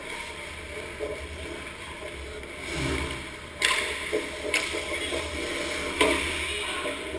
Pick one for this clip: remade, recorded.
recorded